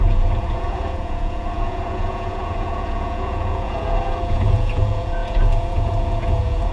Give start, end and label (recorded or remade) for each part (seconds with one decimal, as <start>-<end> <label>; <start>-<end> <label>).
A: 0.0-6.7 remade